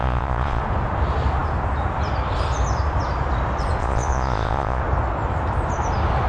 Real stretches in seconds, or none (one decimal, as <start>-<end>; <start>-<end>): 0.6-3.8; 4.8-6.3